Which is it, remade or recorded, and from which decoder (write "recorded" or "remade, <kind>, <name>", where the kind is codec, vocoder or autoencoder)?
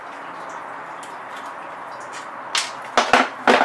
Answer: recorded